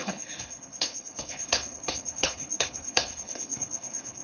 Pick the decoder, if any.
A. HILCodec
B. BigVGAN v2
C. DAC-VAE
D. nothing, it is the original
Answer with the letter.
A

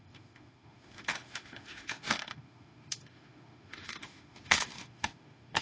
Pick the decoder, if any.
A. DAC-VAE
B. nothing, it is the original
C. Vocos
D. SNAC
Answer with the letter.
A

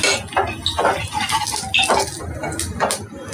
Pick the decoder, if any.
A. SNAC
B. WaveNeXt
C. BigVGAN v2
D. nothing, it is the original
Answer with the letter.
D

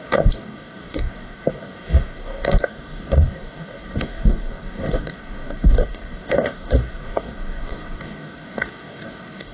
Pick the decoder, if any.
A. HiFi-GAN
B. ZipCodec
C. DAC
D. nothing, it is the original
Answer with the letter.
C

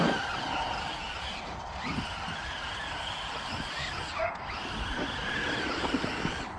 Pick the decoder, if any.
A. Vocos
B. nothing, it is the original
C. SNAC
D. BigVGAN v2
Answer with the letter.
B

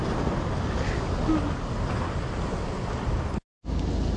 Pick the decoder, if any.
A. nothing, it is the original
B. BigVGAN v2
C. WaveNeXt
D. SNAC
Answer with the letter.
A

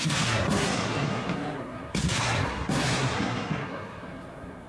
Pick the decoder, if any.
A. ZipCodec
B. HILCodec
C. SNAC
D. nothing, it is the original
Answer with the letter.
C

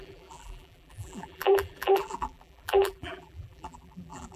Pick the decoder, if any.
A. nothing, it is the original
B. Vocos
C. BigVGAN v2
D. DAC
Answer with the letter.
C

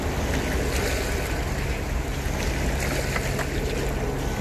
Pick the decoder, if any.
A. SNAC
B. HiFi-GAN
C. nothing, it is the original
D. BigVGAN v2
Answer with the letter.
C